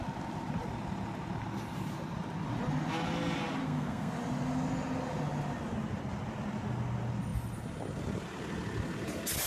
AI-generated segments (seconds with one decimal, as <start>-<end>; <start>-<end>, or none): 3.6-4.1